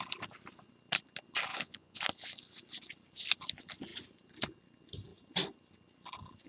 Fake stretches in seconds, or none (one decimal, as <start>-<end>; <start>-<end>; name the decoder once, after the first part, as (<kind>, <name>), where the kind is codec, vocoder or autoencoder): 1.5-2.0 (vocoder, Vocos)

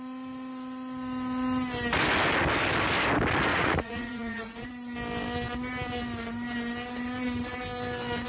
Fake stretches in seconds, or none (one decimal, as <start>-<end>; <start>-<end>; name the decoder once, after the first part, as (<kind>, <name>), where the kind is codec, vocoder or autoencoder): 3.5-4.7 (vocoder, Vocos)